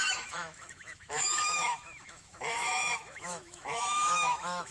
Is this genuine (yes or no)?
no